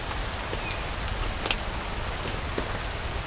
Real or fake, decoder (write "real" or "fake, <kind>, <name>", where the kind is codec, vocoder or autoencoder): real